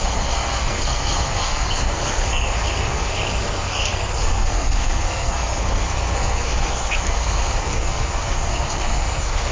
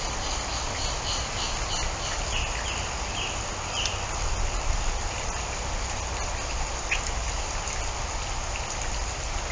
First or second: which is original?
second